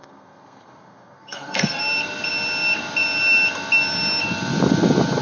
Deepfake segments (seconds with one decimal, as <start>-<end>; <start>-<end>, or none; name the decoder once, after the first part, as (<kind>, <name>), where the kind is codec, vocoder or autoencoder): 0.0-1.8 (codec, SNAC)